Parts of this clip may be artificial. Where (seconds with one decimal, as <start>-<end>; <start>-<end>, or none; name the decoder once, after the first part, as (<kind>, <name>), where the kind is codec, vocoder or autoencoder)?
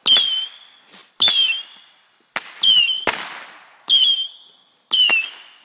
none